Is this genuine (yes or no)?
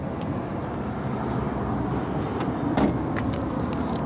yes